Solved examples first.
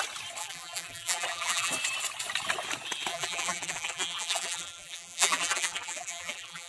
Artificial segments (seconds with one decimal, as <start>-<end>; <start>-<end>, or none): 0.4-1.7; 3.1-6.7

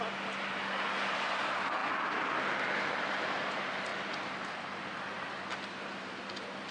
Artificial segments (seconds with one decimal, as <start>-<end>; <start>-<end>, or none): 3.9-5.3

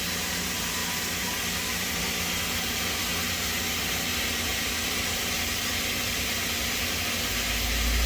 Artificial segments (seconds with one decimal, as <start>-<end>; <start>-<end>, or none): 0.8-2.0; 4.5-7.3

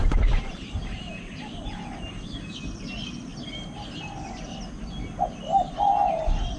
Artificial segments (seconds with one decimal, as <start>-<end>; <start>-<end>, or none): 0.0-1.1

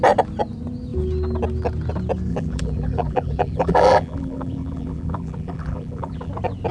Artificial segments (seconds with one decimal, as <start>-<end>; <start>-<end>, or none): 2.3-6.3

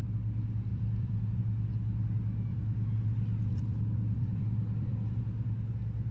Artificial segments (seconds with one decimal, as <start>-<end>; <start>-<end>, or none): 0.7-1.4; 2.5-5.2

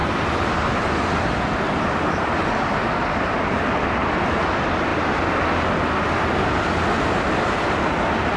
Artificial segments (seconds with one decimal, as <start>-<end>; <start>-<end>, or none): 4.0-4.5